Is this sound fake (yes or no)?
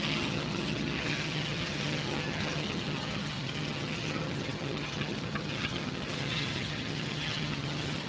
yes